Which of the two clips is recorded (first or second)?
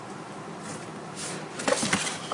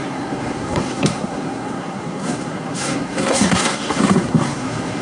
first